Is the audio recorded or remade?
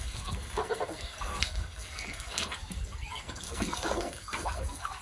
remade